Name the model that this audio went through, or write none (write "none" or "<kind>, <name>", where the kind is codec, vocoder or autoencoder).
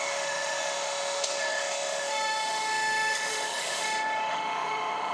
autoencoder, DAC-VAE